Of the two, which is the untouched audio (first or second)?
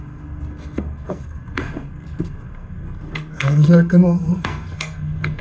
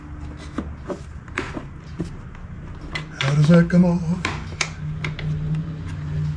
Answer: second